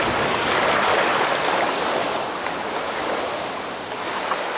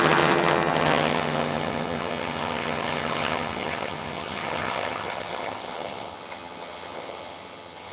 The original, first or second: first